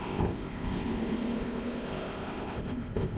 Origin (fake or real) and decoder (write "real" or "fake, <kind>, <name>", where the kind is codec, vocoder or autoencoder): fake, codec, ZipCodec